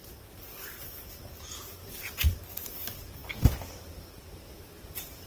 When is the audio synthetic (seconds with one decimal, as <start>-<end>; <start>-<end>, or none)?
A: none